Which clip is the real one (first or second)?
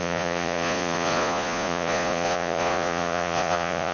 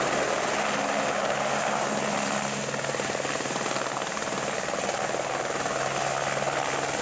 second